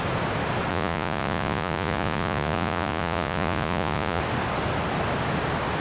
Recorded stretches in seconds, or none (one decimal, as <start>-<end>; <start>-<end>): 0.0-0.7; 4.2-5.8